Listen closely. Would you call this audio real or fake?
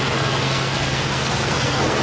fake